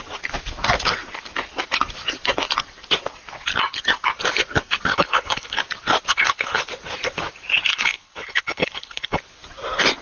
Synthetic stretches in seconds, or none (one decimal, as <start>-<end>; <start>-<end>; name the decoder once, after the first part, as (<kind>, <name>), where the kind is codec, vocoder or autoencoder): 4.9-5.6 (codec, HILCodec); 6.1-6.7; 7.7-9.2